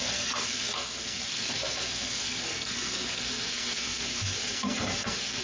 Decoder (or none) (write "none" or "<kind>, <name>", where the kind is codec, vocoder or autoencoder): codec, SNAC